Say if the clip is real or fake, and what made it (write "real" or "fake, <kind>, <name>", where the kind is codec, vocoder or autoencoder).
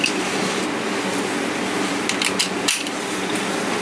real